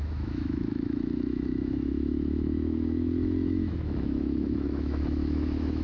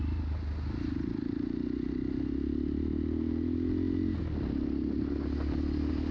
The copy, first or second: first